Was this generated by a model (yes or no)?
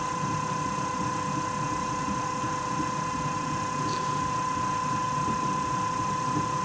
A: no